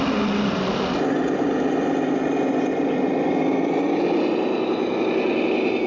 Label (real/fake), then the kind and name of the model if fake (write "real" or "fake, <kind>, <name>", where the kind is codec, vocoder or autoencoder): real